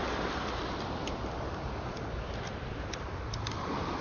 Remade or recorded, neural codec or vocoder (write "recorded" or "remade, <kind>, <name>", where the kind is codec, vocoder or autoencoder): recorded